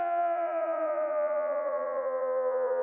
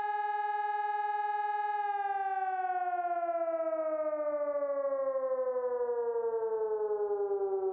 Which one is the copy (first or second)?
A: first